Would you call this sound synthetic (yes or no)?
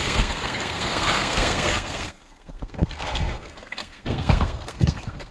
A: yes